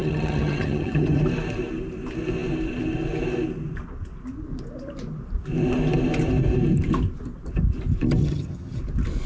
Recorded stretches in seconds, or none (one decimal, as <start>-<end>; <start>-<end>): 1.2-8.2; 8.8-9.3